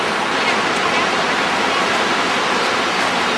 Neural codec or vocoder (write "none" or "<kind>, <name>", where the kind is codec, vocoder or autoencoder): none